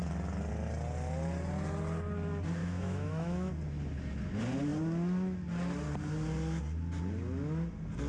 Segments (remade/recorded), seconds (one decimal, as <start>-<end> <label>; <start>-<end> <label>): 0.0-2.6 recorded; 2.6-3.5 remade; 3.5-8.1 recorded